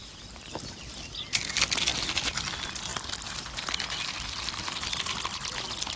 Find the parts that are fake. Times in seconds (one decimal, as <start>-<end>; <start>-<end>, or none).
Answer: none